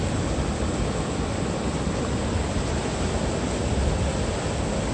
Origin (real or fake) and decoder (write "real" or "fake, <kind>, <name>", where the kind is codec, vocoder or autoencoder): real